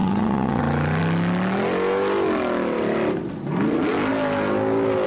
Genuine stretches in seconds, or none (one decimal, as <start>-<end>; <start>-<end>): 0.6-5.1